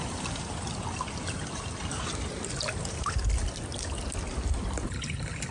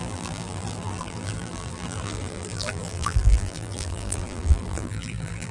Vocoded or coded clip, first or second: second